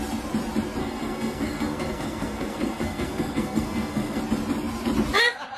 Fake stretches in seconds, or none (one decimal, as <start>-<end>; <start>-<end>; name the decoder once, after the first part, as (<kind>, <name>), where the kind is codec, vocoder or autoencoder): 0.8-4.2 (codec, SNAC)